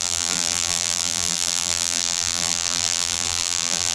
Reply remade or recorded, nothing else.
remade